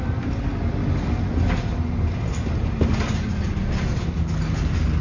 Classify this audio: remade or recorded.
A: recorded